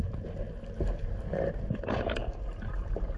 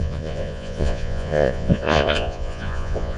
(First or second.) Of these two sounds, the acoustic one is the first